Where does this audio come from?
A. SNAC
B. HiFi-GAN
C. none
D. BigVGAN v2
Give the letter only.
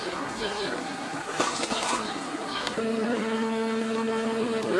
A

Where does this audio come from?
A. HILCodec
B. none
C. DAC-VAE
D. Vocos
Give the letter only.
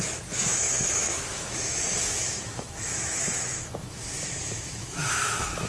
C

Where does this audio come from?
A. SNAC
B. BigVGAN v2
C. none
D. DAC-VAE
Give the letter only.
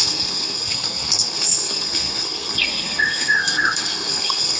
A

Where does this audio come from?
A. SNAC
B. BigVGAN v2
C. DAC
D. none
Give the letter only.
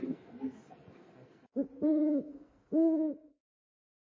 A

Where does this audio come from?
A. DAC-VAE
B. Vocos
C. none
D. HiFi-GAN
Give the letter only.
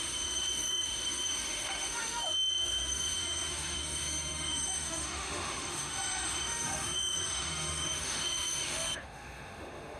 A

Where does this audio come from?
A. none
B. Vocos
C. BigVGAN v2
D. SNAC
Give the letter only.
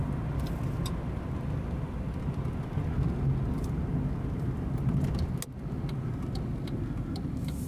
A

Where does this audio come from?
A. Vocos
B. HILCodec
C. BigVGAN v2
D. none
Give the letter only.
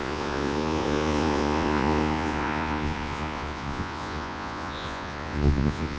A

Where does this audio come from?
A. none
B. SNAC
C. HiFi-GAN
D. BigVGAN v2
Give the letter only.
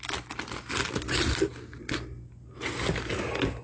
A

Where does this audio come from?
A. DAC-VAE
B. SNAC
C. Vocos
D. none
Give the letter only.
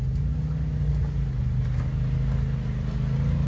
D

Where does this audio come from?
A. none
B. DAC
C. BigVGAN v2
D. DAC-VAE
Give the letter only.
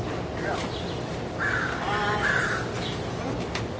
A